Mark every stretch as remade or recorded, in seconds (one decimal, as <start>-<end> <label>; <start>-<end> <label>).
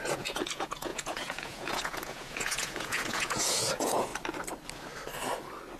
0.0-4.1 remade; 4.1-5.8 recorded